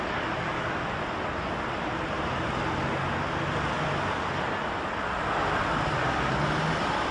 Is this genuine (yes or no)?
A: no